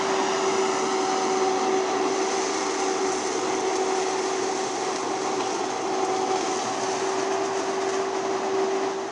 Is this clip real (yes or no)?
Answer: yes